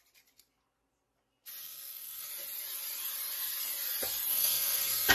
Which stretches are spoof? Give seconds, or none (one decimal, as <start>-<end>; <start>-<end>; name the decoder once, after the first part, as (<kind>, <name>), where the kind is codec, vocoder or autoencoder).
1.6-2.3 (codec, SNAC); 4.3-5.1